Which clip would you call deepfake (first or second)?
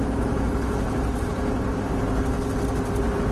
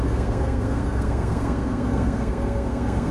second